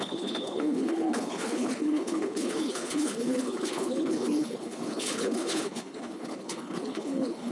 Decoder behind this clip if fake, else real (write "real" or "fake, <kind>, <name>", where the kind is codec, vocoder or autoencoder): fake, codec, HILCodec